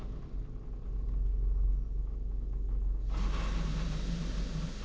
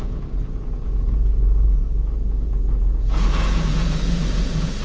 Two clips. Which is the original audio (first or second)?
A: first